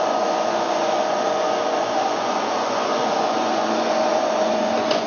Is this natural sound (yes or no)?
no